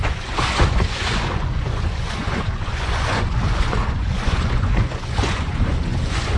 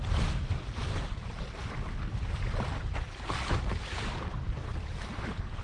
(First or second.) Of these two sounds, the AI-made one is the first